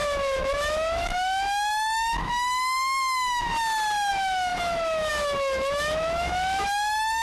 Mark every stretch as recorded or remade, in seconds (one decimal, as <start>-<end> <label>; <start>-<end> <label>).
0.0-3.5 remade; 3.5-4.1 recorded; 4.1-7.2 remade